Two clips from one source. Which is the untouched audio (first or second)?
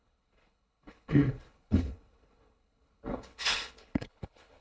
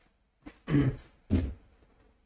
second